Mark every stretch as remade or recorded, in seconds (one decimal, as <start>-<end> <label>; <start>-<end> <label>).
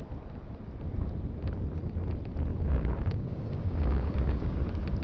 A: 0.0-2.5 recorded; 2.5-4.6 remade; 4.6-5.0 recorded